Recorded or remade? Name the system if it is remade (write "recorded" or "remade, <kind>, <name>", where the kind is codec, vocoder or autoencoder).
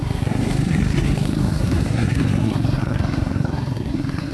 remade, codec, SNAC